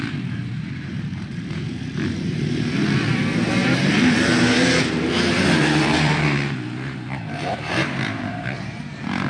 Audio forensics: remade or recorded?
remade